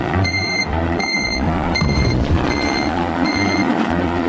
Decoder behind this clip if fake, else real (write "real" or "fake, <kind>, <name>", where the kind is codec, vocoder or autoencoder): fake, vocoder, Vocos